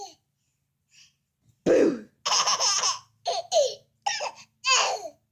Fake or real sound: real